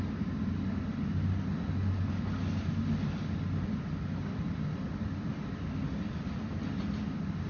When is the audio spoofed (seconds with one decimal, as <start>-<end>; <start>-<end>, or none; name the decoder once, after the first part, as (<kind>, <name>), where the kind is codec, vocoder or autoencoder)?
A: none